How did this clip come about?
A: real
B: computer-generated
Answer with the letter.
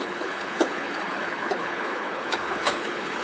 B